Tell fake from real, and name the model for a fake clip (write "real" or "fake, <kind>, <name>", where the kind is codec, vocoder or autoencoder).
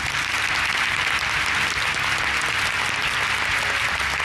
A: real